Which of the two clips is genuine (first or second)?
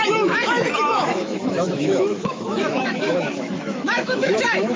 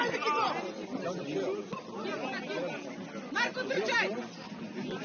second